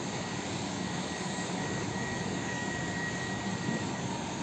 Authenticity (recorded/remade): remade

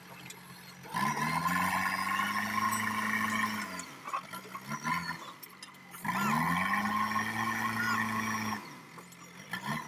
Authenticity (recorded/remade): recorded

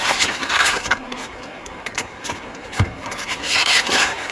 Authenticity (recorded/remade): remade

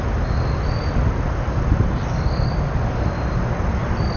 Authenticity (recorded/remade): recorded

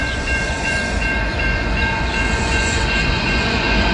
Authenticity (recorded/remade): remade